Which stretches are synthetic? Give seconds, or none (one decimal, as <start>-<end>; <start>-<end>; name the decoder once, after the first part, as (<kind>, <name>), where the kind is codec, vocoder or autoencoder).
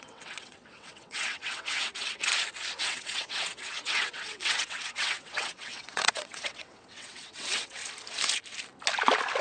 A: 0.0-2.3 (vocoder, WaveNeXt); 2.8-7.8